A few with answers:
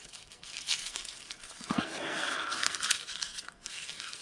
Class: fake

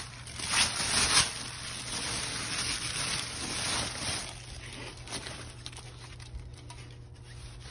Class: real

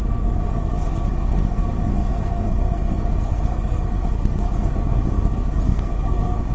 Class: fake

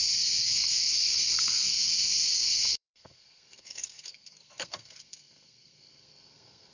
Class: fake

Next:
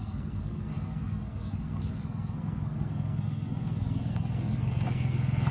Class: fake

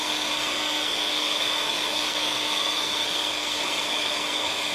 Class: fake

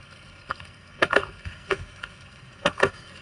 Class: fake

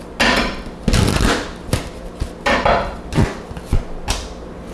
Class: real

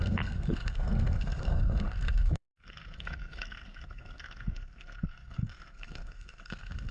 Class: fake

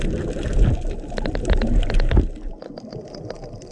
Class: real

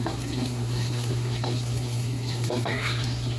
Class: fake